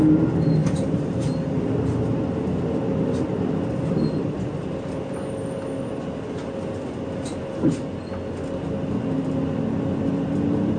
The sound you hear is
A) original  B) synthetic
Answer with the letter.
A